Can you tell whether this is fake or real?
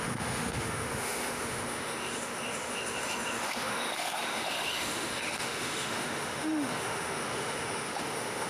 fake